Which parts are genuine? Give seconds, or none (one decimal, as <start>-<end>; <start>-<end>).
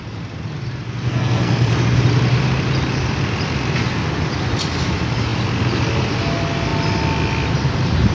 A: 0.0-1.1; 1.7-8.1